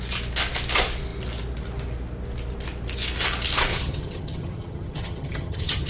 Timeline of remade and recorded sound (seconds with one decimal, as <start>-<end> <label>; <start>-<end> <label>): 0.0-3.7 recorded; 3.7-5.9 remade